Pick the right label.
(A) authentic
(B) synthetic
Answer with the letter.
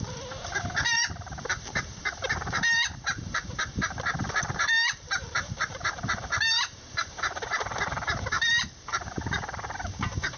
B